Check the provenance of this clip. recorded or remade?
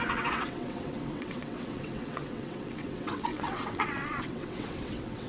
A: remade